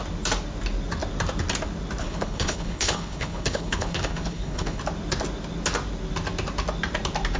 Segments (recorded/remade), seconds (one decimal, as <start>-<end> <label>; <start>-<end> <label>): 0.0-2.0 recorded; 2.0-4.8 remade; 4.8-7.4 recorded